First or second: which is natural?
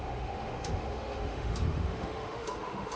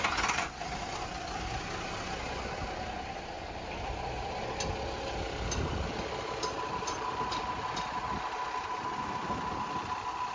second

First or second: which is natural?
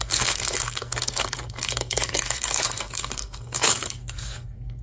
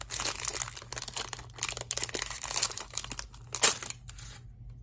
second